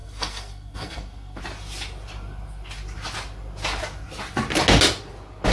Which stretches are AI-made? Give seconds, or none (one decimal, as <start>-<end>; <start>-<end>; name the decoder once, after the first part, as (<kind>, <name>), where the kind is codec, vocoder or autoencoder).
0.0-1.4 (codec, SNAC)